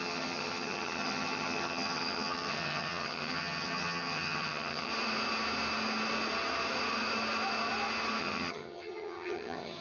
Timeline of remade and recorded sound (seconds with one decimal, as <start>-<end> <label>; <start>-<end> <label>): 0.0-4.9 remade; 4.9-8.2 recorded; 8.2-9.8 remade

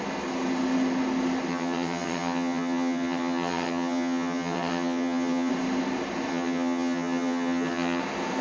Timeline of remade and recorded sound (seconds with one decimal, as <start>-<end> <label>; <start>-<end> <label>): 0.0-1.5 recorded; 1.5-5.5 remade; 5.5-6.3 recorded; 6.3-8.0 remade; 8.0-8.4 recorded

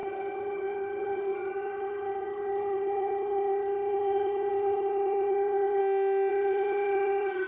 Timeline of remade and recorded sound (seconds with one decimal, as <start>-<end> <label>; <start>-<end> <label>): 0.0-5.8 remade; 5.8-6.3 recorded; 6.3-7.5 remade

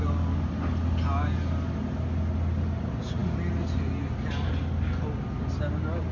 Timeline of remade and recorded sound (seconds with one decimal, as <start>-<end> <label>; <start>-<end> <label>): 0.0-6.1 recorded

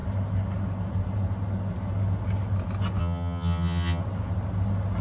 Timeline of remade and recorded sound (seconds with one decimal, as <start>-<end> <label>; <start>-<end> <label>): 0.0-3.0 recorded; 3.0-4.0 remade; 4.0-5.0 recorded

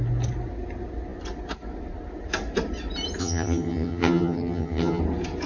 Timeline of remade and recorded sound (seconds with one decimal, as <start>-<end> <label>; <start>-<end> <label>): 0.0-3.2 recorded; 3.2-5.0 remade; 5.0-5.5 recorded

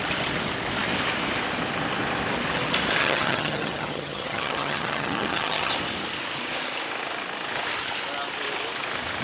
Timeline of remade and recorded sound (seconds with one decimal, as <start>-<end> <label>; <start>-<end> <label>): 0.0-3.0 recorded; 3.0-5.7 remade; 5.7-9.2 recorded

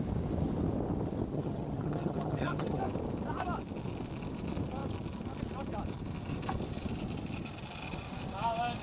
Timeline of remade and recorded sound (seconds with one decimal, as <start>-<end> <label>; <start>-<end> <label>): 0.0-1.3 recorded; 1.3-2.8 remade; 2.8-8.8 recorded